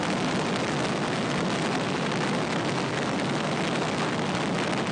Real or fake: real